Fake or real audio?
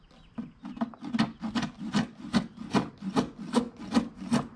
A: real